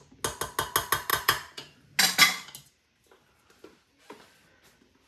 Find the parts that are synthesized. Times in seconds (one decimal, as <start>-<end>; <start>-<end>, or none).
1.1-1.8